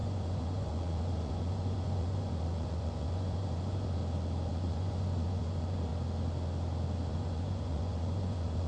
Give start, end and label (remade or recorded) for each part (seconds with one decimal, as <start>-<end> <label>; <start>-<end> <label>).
0.0-4.0 remade; 4.0-4.5 recorded; 4.5-5.9 remade; 5.9-7.1 recorded; 7.1-8.7 remade